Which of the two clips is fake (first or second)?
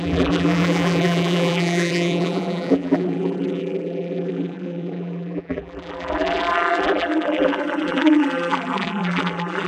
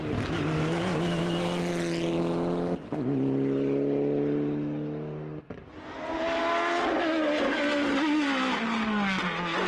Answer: first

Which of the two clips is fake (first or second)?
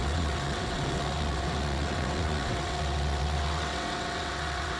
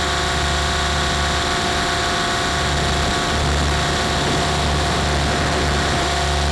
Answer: first